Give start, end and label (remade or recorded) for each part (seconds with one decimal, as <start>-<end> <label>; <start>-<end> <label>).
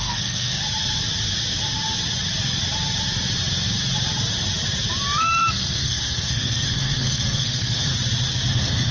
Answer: 0.0-0.6 remade; 0.6-5.2 recorded; 5.2-7.9 remade; 7.9-8.5 recorded; 8.5-8.9 remade